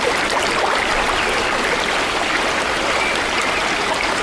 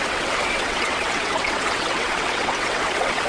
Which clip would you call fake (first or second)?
second